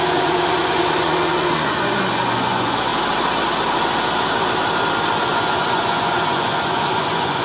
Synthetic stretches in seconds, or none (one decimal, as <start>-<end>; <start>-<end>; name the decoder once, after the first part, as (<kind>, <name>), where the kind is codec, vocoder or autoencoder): 0.0-2.9 (vocoder, Vocos); 5.2-7.4

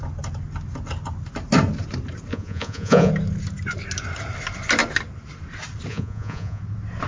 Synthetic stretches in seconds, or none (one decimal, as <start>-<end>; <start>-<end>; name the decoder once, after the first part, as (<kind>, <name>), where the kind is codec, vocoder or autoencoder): 2.3-3.1 (vocoder, Vocos); 5.9-6.6

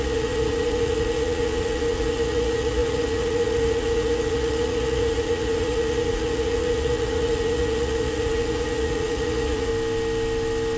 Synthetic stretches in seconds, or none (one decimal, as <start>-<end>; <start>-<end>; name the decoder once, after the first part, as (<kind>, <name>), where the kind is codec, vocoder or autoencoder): 0.0-9.7 (vocoder, Vocos)

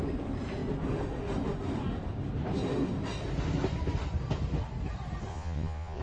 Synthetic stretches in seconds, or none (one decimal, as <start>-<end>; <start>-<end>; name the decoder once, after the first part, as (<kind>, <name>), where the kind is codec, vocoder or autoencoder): 5.3-6.0 (vocoder, Vocos)